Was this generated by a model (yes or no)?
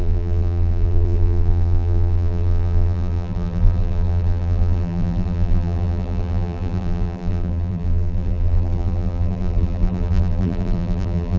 yes